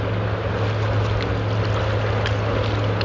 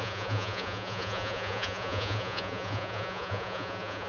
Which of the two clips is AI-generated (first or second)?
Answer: second